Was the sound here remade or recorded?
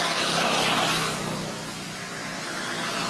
recorded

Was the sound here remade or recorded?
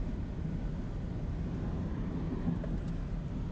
recorded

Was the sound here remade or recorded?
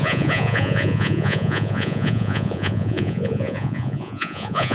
remade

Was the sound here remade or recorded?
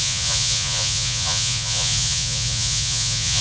remade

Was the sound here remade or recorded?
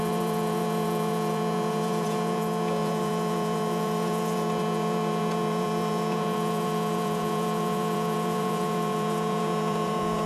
remade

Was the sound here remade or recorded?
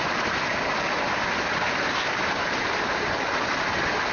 recorded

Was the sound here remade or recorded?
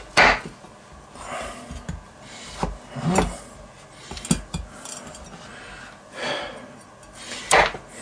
recorded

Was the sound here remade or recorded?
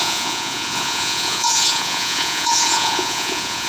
remade